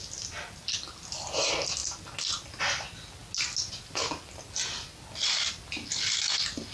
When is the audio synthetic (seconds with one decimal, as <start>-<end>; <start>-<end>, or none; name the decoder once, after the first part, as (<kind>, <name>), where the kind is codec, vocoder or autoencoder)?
none